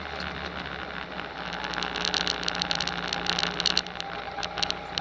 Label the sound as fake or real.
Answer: real